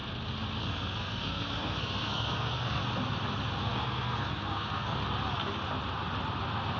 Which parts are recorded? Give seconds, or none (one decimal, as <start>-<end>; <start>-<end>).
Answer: 0.0-0.6; 2.8-3.6; 5.0-6.8